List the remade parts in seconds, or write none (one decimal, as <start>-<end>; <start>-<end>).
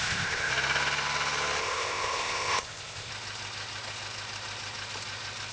0.0-0.5; 1.6-3.1